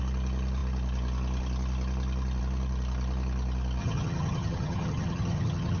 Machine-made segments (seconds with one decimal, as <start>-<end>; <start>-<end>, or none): 3.8-5.8